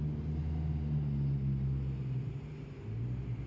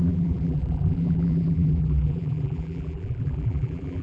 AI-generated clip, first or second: second